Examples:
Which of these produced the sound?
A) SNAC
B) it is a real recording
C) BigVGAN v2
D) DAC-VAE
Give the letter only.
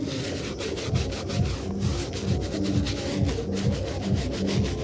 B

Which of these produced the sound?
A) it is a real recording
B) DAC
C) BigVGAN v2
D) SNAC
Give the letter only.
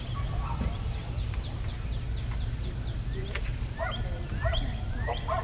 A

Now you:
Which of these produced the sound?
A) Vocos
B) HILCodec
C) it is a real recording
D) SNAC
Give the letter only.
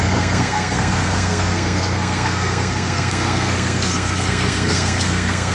D